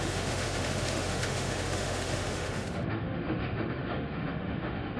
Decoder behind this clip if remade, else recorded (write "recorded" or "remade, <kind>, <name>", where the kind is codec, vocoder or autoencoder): remade, autoencoder, DAC-VAE